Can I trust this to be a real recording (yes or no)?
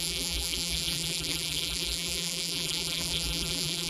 no